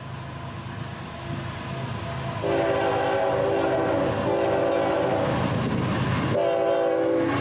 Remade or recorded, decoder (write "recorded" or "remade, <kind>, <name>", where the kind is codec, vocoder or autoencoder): recorded